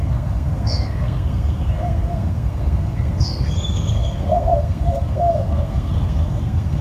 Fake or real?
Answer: fake